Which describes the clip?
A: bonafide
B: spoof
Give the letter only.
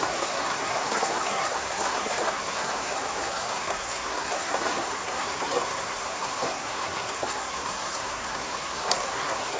B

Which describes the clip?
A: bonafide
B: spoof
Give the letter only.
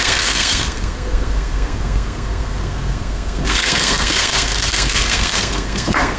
B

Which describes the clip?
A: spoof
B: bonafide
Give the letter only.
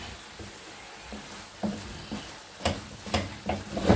B